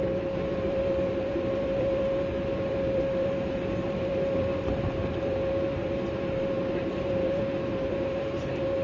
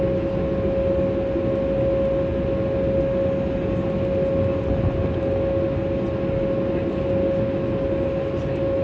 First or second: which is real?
second